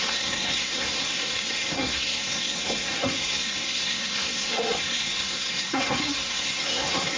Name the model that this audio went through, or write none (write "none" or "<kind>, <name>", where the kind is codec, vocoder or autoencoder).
codec, SNAC